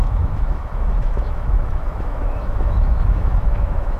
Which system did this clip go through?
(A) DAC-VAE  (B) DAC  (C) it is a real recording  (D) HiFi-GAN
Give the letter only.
A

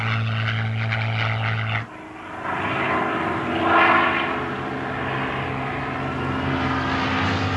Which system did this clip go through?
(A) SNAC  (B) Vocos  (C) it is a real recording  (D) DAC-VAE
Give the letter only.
C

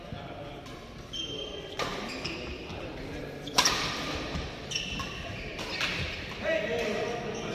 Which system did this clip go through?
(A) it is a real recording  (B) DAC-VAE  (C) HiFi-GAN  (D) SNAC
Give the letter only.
A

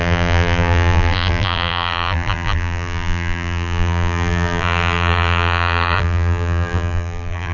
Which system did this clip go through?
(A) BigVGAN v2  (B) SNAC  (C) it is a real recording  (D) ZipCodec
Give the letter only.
A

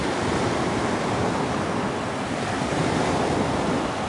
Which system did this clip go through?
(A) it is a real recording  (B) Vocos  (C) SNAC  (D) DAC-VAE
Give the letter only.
A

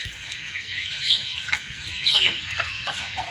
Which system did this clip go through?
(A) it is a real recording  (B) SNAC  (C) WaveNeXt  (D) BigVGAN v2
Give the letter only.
B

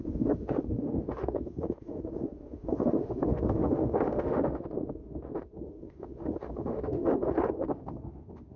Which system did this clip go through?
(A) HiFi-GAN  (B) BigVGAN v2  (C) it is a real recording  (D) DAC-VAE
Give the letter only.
D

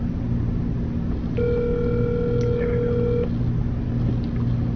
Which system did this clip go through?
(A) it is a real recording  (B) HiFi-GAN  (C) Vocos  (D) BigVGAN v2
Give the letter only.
A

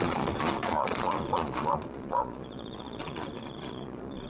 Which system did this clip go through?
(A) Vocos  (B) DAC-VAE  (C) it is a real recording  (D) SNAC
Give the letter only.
A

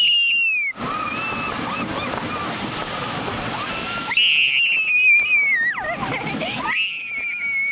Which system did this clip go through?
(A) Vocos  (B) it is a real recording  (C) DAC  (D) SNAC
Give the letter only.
B